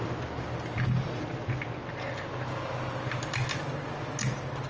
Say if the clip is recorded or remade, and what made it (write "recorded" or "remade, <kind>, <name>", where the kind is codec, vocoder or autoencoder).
recorded